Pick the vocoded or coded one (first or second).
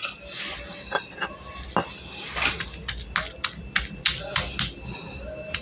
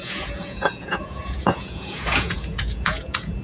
second